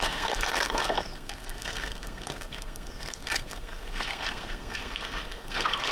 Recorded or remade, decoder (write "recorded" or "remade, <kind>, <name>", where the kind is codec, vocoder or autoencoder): remade, codec, SNAC